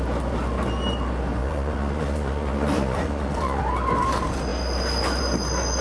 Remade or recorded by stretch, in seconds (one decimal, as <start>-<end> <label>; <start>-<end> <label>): 0.0-1.4 recorded; 1.4-3.6 remade; 3.6-5.8 recorded